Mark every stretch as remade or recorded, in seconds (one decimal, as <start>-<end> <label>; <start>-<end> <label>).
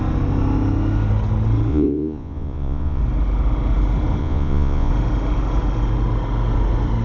0.0-1.7 recorded; 1.7-3.0 remade; 3.0-4.2 recorded; 4.2-4.9 remade; 4.9-7.0 recorded